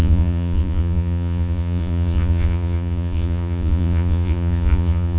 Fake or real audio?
fake